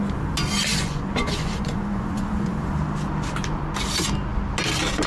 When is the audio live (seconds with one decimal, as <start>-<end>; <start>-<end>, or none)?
0.0-0.7; 2.7-5.1